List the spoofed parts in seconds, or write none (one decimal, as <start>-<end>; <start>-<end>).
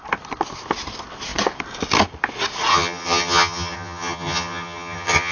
2.7-5.3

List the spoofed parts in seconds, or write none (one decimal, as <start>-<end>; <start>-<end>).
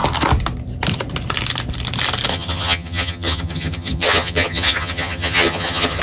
2.3-6.0